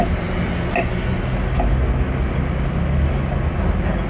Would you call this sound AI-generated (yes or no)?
no